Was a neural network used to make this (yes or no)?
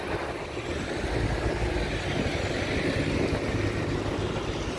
no